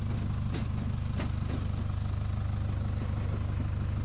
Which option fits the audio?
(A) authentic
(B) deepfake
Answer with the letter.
A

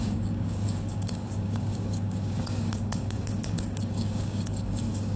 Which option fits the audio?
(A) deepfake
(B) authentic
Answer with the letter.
A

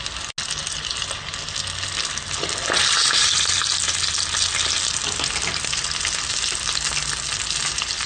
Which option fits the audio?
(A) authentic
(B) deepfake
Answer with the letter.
A